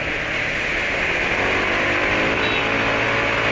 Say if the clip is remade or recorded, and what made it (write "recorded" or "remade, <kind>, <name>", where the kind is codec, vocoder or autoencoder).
recorded